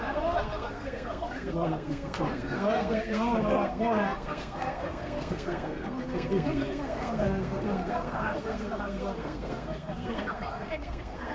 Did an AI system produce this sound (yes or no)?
yes